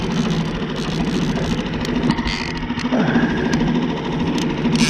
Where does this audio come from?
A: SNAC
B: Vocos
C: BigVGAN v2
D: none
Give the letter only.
D